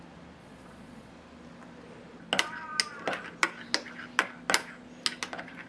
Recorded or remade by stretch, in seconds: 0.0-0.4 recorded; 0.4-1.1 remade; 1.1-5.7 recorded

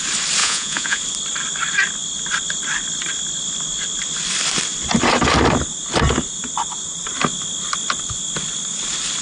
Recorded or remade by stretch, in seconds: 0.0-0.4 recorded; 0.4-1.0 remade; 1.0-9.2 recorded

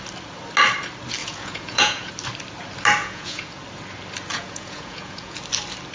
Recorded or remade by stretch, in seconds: 0.0-1.2 recorded; 1.2-2.1 remade; 2.1-3.0 recorded; 3.0-3.6 remade; 3.6-4.3 recorded; 4.3-5.4 remade; 5.4-5.9 recorded

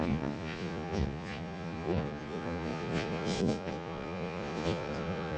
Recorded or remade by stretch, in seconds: 0.0-5.4 remade